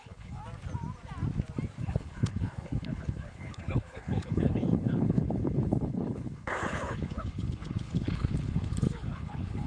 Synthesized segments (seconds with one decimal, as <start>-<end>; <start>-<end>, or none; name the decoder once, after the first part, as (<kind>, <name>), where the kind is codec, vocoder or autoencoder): 0.0-0.4 (codec, HILCodec); 1.8-9.7